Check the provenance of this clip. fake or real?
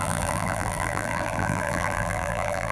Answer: fake